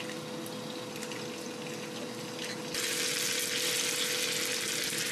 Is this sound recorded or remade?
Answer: recorded